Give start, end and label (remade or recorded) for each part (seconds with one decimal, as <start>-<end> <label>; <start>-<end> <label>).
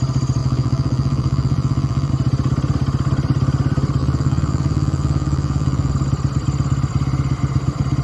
0.0-0.4 recorded; 0.4-2.1 remade; 2.1-4.0 recorded; 4.0-5.9 remade; 5.9-8.0 recorded